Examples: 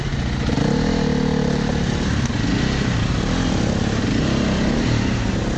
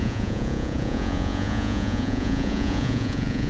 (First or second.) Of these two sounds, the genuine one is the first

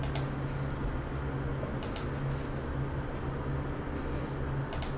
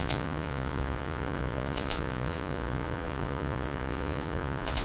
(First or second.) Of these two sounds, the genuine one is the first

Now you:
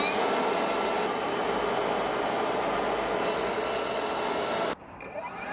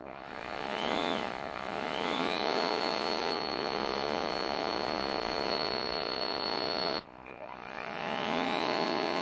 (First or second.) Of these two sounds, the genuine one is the first